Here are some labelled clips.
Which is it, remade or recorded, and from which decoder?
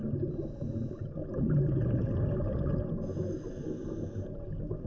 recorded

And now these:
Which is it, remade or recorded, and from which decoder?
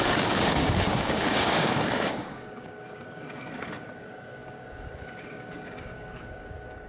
remade, codec, DAC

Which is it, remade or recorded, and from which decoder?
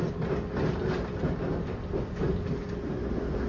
recorded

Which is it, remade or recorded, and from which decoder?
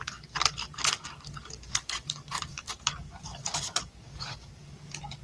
remade, codec, DAC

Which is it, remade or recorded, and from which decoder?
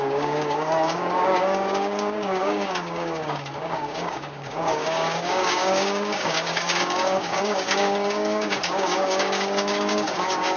remade, codec, DAC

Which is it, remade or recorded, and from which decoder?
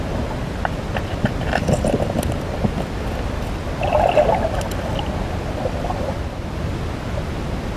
recorded